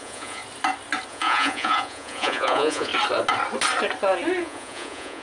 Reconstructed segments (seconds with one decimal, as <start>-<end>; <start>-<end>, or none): 0.0-0.4; 1.1-2.9; 4.4-5.2